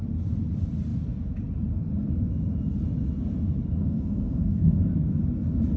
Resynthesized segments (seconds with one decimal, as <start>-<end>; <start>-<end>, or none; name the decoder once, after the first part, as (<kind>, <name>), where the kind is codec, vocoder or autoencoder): 3.8-4.8 (codec, SNAC)